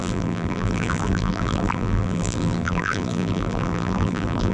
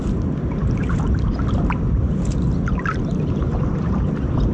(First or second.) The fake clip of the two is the first